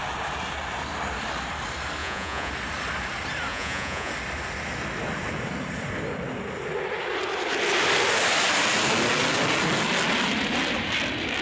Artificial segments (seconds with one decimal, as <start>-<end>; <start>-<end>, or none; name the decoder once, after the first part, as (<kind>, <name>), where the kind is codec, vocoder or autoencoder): 2.0-2.5 (vocoder, Vocos); 3.5-4.1